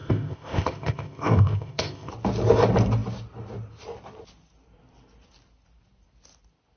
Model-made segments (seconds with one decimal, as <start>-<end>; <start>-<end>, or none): 0.0-2.1